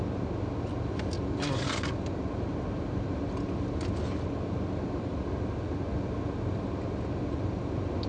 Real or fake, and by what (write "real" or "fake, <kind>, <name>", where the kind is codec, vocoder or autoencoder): real